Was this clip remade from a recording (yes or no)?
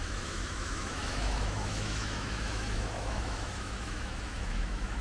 yes